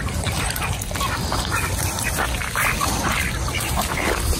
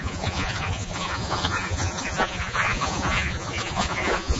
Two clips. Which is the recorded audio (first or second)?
first